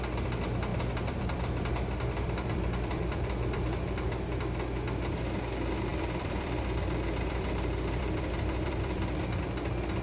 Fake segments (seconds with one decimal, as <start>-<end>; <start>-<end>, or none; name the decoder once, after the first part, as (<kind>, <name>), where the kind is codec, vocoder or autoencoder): 0.7-4.4 (vocoder, BigVGAN v2); 5.9-9.2